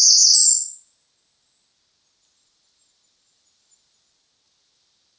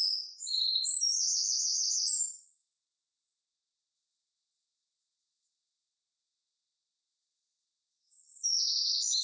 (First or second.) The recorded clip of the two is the first